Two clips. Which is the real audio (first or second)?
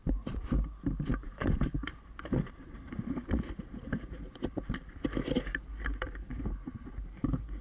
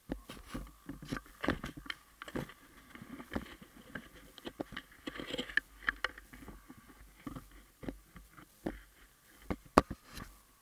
second